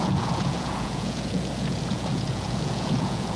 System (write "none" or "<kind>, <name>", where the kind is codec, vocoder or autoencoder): vocoder, Vocos